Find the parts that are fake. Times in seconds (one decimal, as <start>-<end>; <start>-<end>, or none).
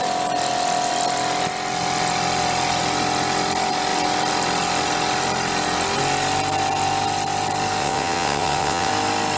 7.8-8.9